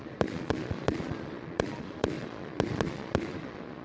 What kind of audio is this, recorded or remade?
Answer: remade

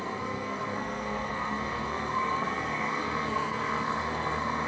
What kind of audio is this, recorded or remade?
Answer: remade